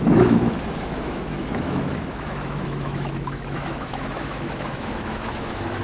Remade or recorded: remade